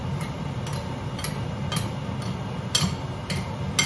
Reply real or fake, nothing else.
real